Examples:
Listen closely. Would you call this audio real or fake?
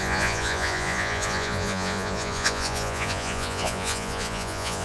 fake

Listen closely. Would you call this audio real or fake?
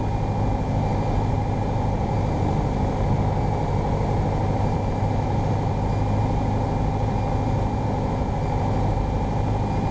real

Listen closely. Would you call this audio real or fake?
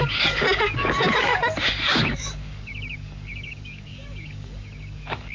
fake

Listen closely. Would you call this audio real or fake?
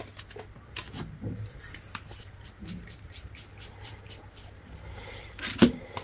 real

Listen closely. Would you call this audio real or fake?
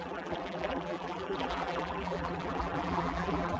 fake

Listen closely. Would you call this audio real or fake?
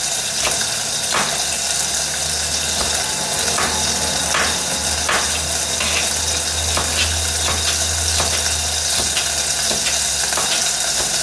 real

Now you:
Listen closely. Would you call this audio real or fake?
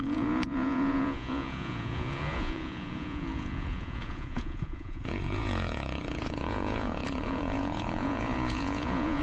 fake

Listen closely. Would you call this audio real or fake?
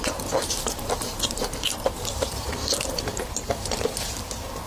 fake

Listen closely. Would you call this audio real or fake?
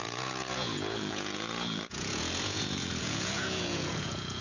fake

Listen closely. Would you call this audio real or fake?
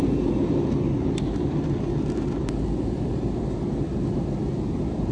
real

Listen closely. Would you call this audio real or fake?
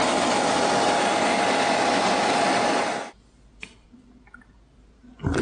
real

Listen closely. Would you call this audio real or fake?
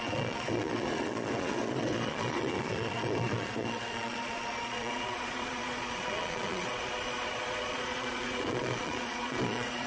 fake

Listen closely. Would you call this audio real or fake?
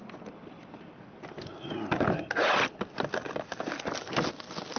real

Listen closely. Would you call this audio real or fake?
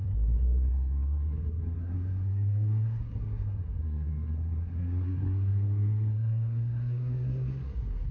fake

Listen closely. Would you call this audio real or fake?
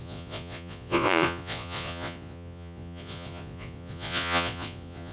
fake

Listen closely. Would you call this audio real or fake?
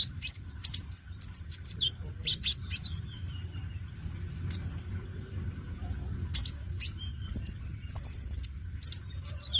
real